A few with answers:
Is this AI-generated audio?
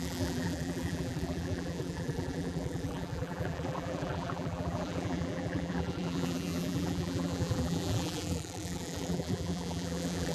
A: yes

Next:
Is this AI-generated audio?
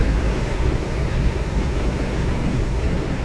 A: yes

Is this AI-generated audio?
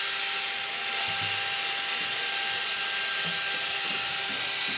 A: no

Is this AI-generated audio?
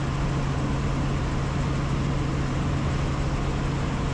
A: no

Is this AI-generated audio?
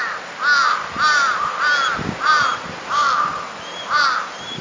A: no